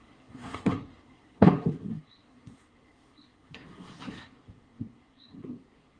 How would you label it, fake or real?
fake